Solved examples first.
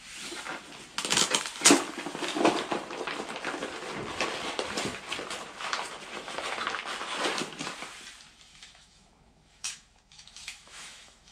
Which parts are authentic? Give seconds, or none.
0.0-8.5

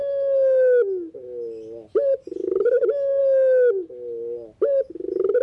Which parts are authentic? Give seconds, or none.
0.0-5.4

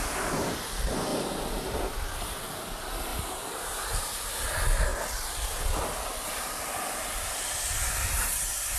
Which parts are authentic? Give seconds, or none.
0.0-1.1; 1.8-3.1; 4.4-4.9; 7.6-8.8

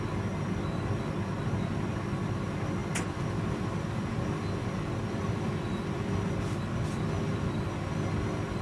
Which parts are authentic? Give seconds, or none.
0.0-8.6

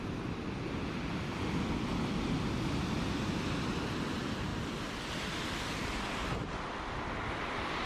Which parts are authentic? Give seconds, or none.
0.0-7.9

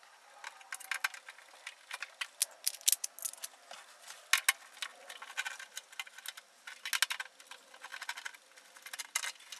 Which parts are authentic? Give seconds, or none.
0.0-9.6

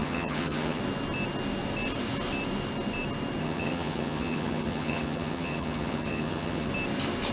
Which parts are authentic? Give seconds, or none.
0.8-3.4; 6.7-7.3